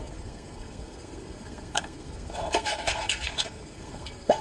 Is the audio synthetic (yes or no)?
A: yes